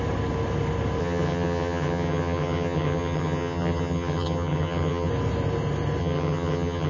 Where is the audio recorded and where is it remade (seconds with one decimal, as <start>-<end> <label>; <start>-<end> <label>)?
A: 0.0-1.0 recorded; 1.0-5.1 remade; 5.1-6.0 recorded; 6.0-6.9 remade